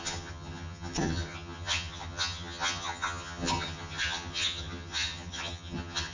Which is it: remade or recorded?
remade